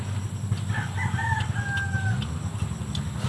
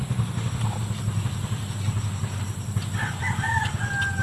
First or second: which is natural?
first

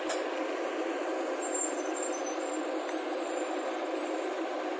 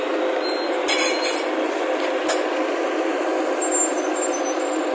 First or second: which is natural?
second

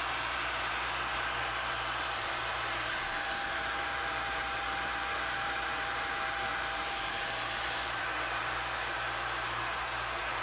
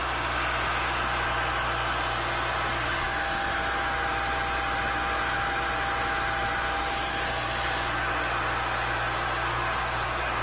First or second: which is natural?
second